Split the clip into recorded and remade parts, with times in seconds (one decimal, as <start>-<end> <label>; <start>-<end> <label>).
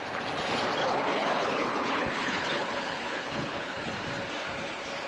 0.0-0.8 recorded; 0.8-3.9 remade; 3.9-5.1 recorded